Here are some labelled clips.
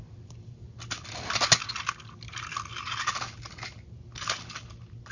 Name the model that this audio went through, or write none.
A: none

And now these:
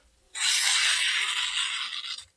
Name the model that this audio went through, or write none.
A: none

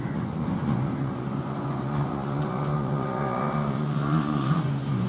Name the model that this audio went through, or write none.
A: vocoder, Vocos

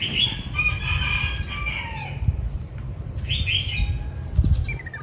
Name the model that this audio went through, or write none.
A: none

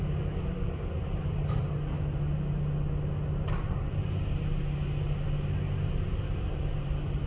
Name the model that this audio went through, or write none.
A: none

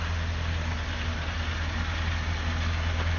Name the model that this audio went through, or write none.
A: none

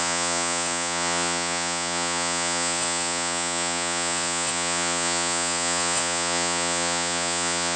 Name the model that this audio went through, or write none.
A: vocoder, Vocos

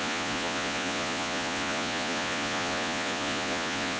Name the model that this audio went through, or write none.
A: vocoder, Vocos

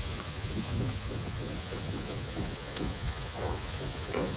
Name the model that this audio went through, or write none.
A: vocoder, Vocos